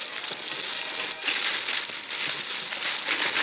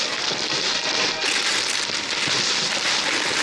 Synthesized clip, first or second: second